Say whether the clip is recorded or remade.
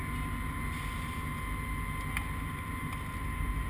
recorded